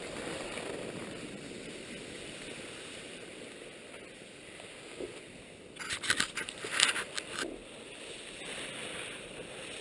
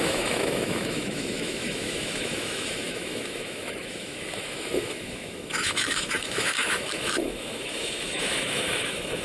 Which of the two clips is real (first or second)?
first